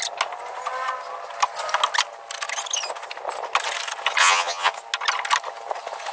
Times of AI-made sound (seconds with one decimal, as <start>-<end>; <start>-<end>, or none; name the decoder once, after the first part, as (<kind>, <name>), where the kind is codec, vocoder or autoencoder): 4.2-4.7 (vocoder, HiFi-GAN)